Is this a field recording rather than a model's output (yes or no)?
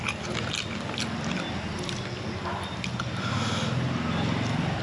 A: yes